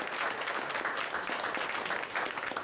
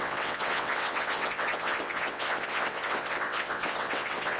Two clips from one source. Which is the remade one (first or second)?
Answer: second